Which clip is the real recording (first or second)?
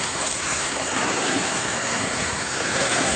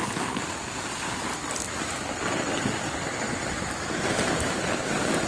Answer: second